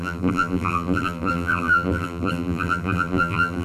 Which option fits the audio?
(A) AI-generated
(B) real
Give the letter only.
A